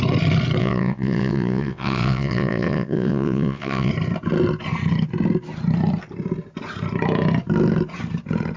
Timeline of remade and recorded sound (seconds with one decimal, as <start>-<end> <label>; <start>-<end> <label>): 0.0-0.6 recorded; 0.6-3.9 remade; 3.9-8.6 recorded